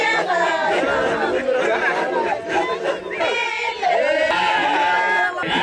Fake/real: real